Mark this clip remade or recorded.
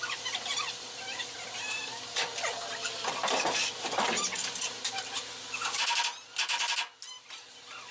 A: recorded